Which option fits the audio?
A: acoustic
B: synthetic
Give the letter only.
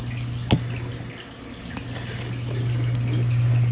A